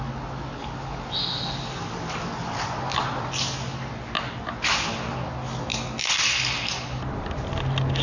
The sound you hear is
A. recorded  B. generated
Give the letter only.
A